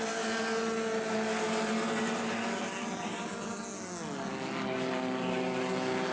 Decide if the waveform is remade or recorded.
recorded